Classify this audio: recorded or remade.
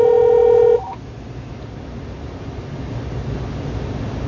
recorded